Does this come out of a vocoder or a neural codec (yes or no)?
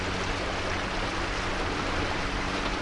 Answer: no